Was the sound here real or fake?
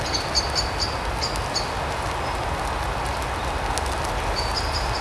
real